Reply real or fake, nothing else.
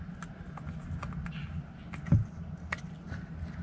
real